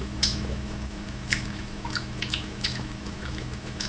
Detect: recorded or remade remade